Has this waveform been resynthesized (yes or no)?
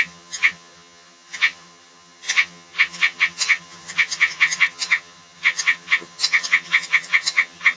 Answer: yes